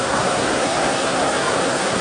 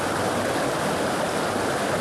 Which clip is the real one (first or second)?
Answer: second